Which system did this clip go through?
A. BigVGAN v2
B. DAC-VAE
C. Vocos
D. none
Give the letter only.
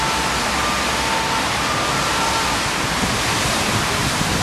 D